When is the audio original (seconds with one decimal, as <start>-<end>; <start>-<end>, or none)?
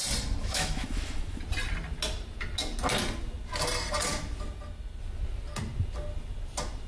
0.0-0.4; 1.4-6.9